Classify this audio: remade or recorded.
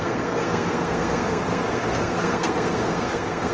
remade